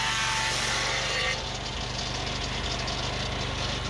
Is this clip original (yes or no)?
yes